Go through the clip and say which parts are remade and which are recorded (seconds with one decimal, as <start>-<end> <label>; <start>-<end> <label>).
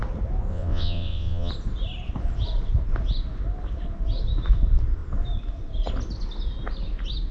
0.0-0.5 recorded; 0.5-1.5 remade; 1.5-7.3 recorded